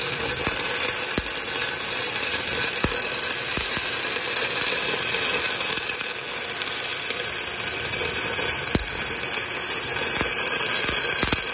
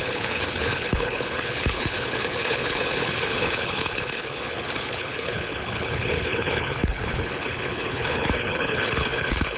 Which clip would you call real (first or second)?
first